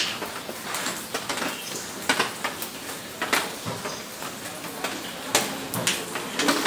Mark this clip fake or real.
real